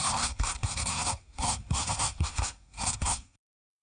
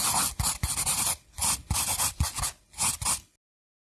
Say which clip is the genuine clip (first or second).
second